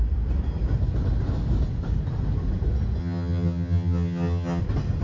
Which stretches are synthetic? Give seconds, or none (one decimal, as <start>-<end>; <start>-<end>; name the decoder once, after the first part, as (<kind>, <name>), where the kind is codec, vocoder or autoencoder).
3.0-4.6 (vocoder, HiFi-GAN)